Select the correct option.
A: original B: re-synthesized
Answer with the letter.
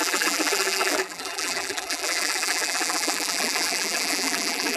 B